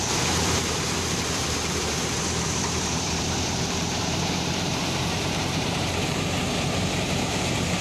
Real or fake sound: fake